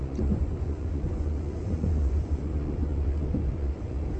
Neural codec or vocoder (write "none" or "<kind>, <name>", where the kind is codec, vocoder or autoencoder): vocoder, Vocos